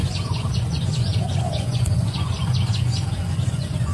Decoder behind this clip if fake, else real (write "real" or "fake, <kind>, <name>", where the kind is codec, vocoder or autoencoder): fake, vocoder, Vocos